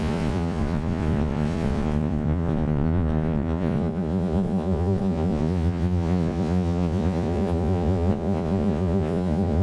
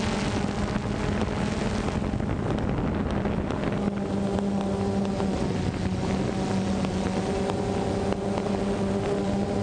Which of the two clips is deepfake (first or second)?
first